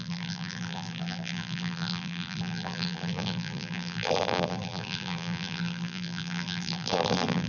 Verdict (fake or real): fake